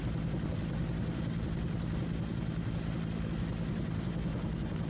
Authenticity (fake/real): real